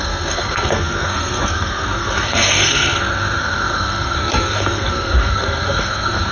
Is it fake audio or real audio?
fake